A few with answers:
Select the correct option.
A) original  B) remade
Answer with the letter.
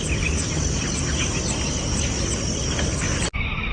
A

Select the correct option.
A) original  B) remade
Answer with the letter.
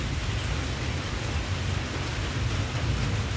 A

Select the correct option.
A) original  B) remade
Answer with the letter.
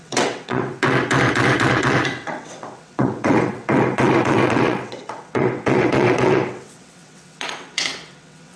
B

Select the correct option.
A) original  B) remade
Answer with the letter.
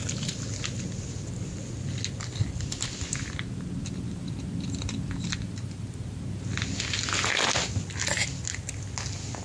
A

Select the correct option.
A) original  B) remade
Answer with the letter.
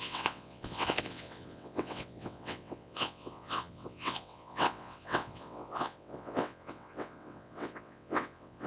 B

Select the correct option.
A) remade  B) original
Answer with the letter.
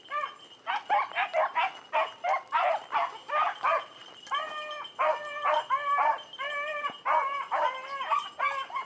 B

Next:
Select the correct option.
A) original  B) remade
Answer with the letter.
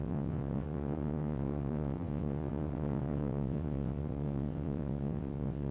B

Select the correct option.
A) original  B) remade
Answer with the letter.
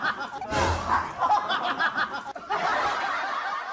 A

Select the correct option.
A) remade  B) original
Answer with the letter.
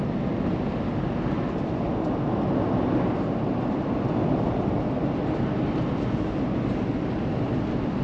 B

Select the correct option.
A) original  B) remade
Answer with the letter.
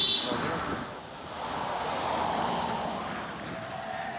A